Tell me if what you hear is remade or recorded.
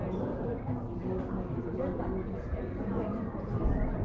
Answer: recorded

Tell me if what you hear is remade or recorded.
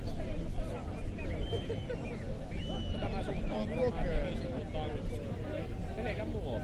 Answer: recorded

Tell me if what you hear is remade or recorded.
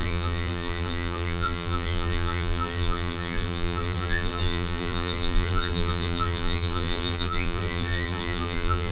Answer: remade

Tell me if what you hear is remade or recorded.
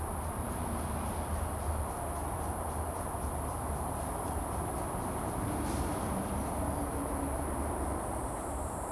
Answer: remade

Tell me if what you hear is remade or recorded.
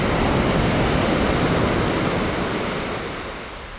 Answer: recorded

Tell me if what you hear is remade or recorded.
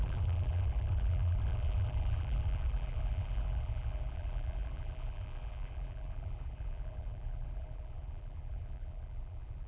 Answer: remade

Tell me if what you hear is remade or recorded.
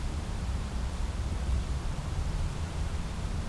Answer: remade